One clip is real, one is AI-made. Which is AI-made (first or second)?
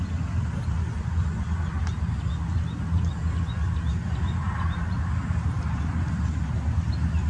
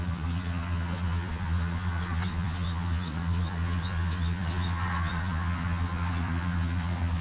second